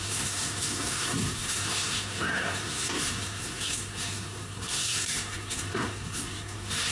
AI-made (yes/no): yes